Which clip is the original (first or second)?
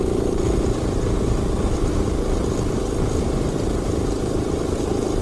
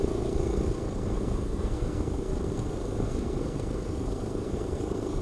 first